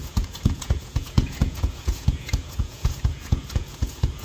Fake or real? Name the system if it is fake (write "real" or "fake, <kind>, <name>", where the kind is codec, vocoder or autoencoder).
fake, vocoder, Vocos